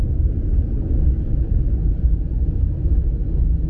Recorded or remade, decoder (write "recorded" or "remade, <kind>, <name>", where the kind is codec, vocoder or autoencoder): recorded